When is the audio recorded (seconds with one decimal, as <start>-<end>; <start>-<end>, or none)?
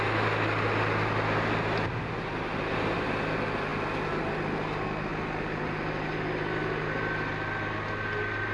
0.0-5.1; 7.3-8.5